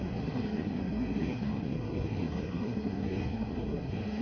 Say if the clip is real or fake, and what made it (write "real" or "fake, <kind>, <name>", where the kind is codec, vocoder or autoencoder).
fake, codec, SNAC